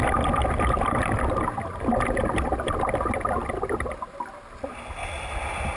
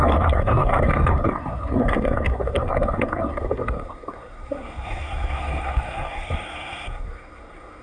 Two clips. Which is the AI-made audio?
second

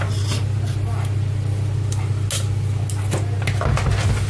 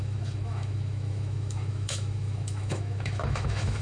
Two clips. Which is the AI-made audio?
second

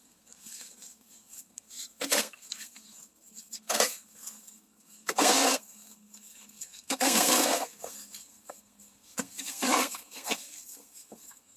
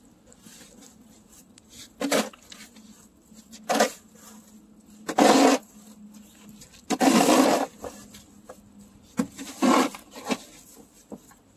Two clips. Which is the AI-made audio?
first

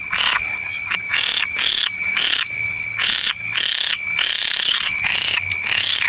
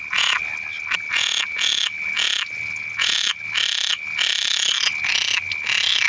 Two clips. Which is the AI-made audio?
first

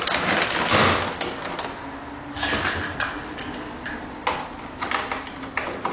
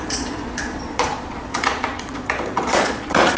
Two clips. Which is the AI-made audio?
second